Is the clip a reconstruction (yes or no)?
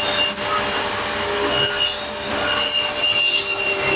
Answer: no